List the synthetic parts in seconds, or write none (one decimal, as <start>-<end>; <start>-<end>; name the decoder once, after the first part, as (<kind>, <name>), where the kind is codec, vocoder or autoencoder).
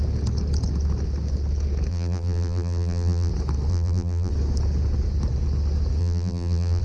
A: 1.9-3.3 (vocoder, BigVGAN v2); 3.7-4.3; 6.0-6.8